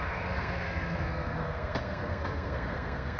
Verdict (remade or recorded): remade